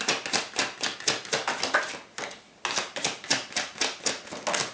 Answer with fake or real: real